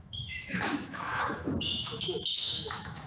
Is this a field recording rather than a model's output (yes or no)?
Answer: no